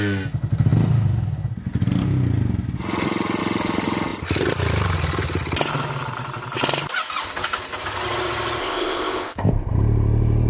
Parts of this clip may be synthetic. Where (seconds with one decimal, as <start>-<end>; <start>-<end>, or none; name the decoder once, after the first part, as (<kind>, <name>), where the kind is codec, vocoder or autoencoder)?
8.6-9.5 (codec, ZipCodec)